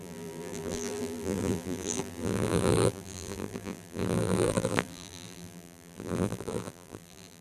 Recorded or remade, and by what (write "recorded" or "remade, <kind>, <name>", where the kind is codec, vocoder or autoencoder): remade, vocoder, BigVGAN v2